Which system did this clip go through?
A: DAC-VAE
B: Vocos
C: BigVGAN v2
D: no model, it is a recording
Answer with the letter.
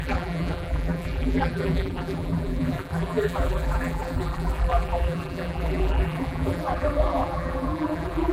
C